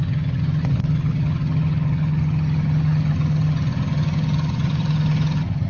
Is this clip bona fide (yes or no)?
no